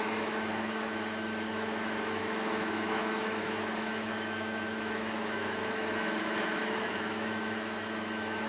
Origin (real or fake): fake